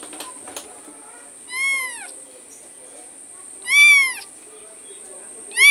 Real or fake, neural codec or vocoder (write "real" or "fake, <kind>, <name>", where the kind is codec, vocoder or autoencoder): real